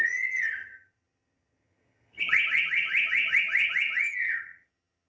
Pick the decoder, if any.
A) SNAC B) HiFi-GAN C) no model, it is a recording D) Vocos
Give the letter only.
B